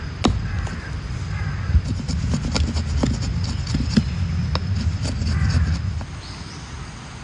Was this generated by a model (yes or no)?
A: no